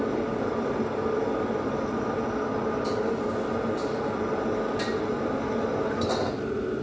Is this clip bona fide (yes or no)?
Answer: yes